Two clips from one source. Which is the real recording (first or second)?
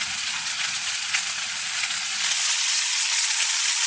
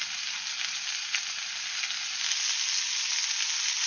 second